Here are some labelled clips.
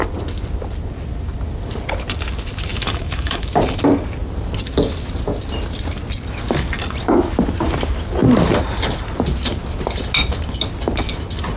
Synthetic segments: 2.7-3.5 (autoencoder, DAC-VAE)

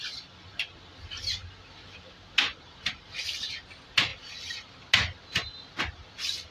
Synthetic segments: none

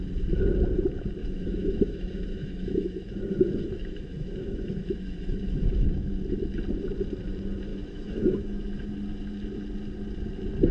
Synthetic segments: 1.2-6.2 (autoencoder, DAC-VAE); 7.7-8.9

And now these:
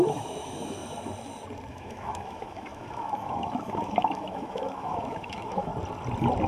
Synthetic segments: 0.0-0.8 (autoencoder, DAC-VAE); 1.7-5.7

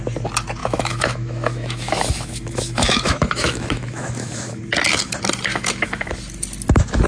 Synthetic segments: 0.6-4.6 (autoencoder, DAC-VAE); 5.5-6.1

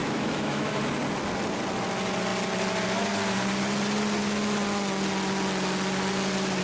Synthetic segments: 0.0-0.8 (autoencoder, DAC-VAE)

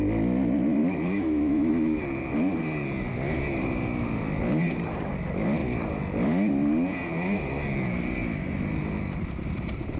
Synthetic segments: 0.8-1.7 (autoencoder, DAC-VAE)

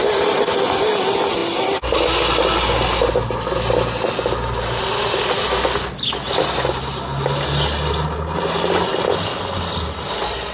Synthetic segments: none